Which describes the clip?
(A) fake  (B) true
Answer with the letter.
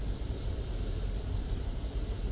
B